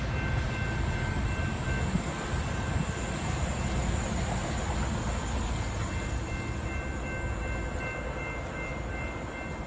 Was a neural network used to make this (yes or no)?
no